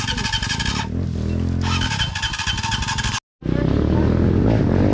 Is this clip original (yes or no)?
yes